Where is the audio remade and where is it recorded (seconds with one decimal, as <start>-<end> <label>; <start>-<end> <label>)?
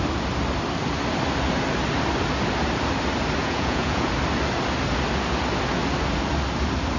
0.0-3.4 recorded; 3.4-4.1 remade; 4.1-7.0 recorded